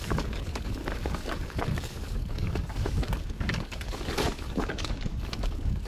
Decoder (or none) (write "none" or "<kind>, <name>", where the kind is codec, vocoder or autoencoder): codec, DAC